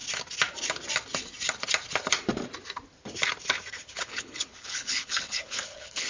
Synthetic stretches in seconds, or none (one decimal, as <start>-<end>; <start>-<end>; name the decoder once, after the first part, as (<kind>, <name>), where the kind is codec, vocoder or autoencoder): 3.7-6.1 (codec, HILCodec)